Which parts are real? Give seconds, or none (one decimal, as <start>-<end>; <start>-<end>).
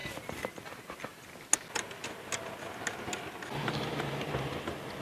0.0-5.0